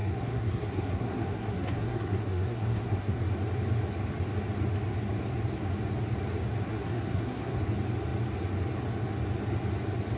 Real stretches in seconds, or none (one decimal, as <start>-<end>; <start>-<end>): 3.2-6.6; 7.6-10.2